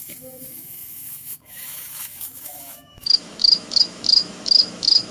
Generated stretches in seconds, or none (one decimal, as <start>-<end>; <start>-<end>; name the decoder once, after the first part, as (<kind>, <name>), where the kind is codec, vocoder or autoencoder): 0.0-5.1 (autoencoder, DAC-VAE)